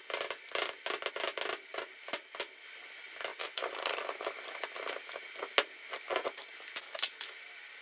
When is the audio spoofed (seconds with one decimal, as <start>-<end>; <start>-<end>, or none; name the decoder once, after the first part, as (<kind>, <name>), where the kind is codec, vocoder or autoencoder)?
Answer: 1.7-2.3 (vocoder, BigVGAN v2); 3.3-4.3